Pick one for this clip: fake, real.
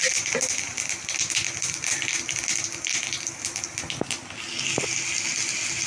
real